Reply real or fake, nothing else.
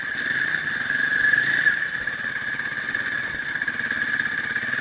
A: real